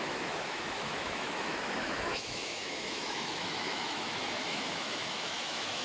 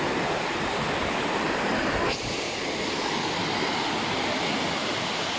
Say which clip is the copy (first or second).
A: first